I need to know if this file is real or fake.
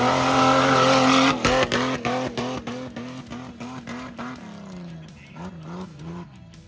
real